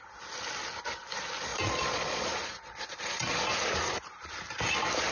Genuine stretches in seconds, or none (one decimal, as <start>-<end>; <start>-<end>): 0.0-1.5; 3.3-5.1